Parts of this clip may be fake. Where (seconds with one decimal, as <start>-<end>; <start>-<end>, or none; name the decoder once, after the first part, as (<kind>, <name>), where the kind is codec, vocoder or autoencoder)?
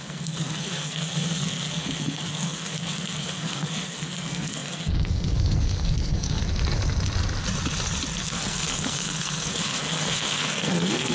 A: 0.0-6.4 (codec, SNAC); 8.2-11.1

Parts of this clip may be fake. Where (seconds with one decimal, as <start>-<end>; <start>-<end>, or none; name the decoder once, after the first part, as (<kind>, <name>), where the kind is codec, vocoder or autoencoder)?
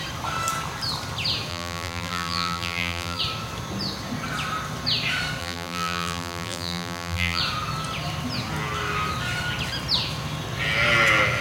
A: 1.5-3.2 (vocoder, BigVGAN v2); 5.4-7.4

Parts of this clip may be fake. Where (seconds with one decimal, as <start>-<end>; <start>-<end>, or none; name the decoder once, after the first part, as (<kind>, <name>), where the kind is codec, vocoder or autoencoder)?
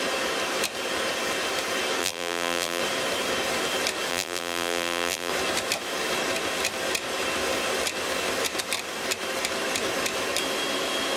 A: 2.0-2.8 (vocoder, BigVGAN v2); 4.1-5.3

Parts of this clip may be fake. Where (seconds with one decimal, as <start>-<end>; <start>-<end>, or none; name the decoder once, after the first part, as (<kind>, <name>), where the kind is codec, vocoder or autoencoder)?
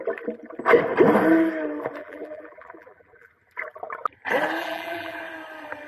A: 2.0-3.3 (vocoder, BigVGAN v2); 4.6-5.2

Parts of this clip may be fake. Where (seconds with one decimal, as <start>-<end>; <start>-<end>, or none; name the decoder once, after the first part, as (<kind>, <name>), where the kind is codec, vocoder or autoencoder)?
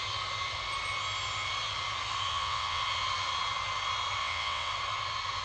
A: 2.3-2.8 (vocoder, WaveNeXt); 4.2-4.7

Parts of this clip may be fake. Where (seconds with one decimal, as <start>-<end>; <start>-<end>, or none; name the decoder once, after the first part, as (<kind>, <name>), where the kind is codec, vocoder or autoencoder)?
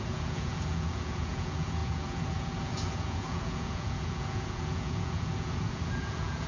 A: 0.0-6.5 (vocoder, Vocos)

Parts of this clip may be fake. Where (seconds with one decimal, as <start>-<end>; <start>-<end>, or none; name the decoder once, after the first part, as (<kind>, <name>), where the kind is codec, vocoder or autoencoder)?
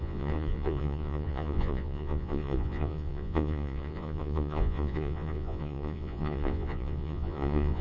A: 0.0-7.8 (vocoder, Vocos)